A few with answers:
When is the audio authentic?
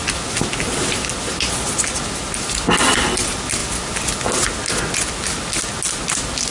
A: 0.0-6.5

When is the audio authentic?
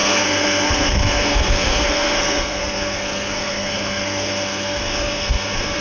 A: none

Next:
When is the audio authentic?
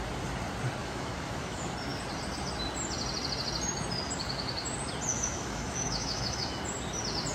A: 0.0-0.8; 1.7-5.1; 6.6-7.3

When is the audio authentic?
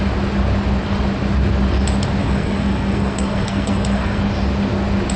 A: 0.0-2.2; 4.2-5.2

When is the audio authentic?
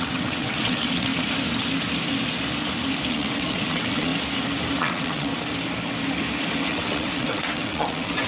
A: 1.1-3.1; 4.1-4.8; 5.3-6.7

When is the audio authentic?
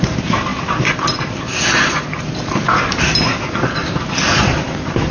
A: 0.0-5.1